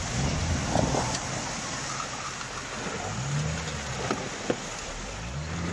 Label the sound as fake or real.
real